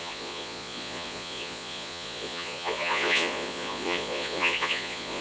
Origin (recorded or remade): remade